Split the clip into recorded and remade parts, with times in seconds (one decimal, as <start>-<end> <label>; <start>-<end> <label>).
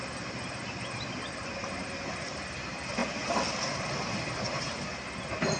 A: 0.0-5.6 recorded